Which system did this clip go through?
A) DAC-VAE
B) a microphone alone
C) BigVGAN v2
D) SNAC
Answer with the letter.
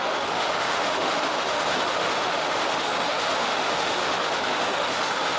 A